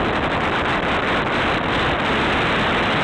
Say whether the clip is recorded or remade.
recorded